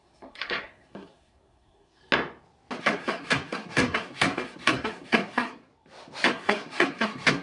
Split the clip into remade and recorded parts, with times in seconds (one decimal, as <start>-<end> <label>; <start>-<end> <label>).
0.0-2.0 remade; 2.0-2.8 recorded; 2.8-5.7 remade; 5.7-6.3 recorded; 6.3-7.4 remade